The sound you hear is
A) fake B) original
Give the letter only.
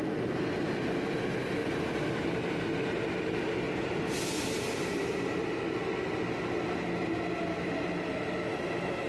B